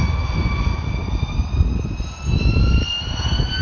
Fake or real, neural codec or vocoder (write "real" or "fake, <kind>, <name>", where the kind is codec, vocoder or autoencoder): real